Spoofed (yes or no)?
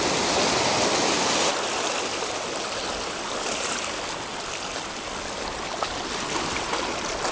no